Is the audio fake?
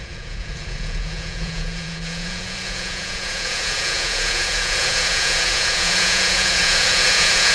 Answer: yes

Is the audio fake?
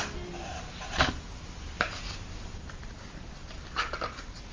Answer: no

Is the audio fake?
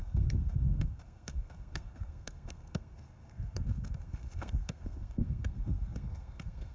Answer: yes